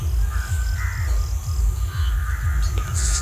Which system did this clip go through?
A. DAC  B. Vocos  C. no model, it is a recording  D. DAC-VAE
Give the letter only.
C